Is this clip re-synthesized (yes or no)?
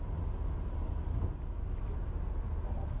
no